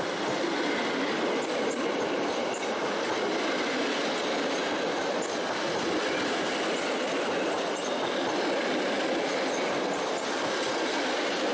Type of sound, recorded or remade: recorded